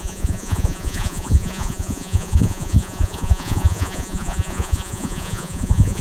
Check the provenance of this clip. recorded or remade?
remade